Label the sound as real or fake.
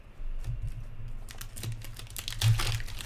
real